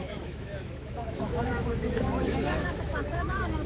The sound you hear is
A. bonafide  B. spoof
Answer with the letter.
B